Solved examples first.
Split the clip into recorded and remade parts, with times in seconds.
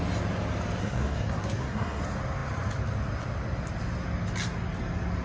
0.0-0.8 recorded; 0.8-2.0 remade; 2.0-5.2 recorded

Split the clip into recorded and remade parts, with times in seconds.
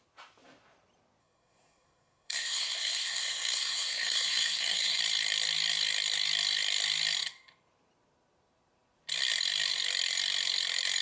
0.0-1.2 recorded; 1.2-5.0 remade; 5.0-11.0 recorded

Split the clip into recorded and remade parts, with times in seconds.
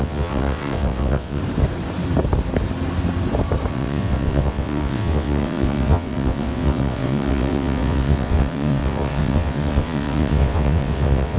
0.0-1.4 remade; 1.4-3.7 recorded; 3.7-11.4 remade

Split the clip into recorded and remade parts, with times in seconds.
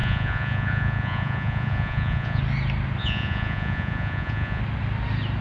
0.0-2.4 remade; 2.4-3.0 recorded; 3.0-4.6 remade; 4.6-5.4 recorded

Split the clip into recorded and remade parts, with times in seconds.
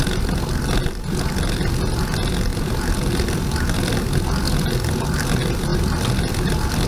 0.0-6.9 recorded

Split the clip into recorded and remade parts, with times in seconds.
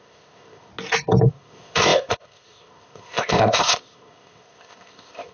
0.0-0.7 remade; 0.7-1.3 recorded; 1.3-5.3 remade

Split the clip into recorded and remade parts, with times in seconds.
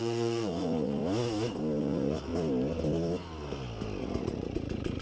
0.0-1.0 remade; 1.0-1.8 recorded; 1.8-2.3 remade; 2.3-4.0 recorded; 4.0-5.0 remade